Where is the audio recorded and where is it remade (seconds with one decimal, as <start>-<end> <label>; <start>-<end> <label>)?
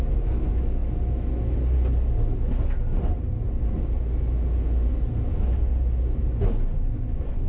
0.0-7.5 recorded